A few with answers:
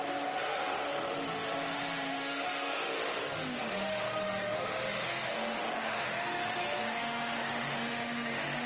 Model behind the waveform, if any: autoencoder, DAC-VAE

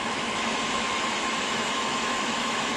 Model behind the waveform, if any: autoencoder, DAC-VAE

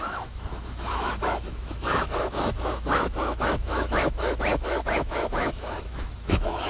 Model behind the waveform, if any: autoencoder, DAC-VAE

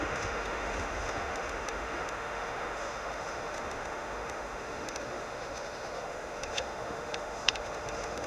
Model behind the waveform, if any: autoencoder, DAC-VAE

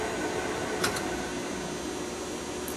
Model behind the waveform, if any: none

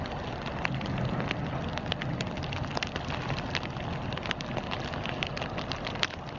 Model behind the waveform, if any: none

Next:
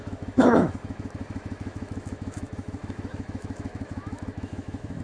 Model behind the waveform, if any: autoencoder, DAC-VAE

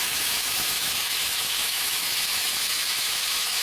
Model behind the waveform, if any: autoencoder, DAC-VAE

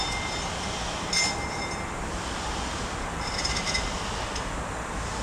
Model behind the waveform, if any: none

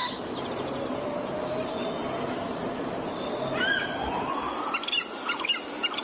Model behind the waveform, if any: none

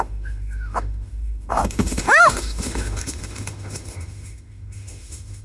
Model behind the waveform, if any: autoencoder, DAC-VAE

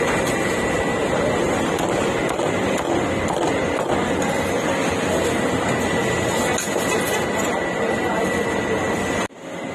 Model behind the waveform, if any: none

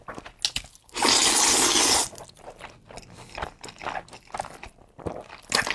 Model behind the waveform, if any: none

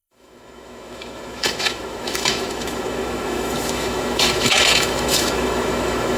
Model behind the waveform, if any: autoencoder, DAC-VAE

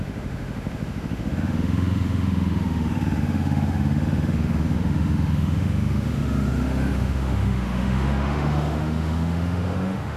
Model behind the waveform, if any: autoencoder, DAC-VAE